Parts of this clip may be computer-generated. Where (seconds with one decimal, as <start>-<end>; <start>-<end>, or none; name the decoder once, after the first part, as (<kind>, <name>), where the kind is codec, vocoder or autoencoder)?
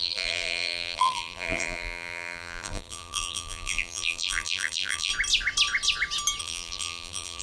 0.0-5.1 (vocoder, BigVGAN v2); 6.4-7.4